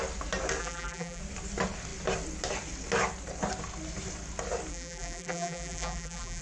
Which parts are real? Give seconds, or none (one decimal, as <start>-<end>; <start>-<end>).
0.0-0.6; 1.2-4.7